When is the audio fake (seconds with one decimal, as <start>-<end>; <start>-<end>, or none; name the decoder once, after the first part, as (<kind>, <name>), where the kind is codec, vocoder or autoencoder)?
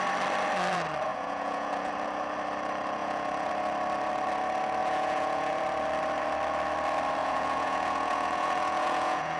1.1-1.9 (vocoder, Vocos); 3.0-3.5; 4.8-5.5; 7.2-9.4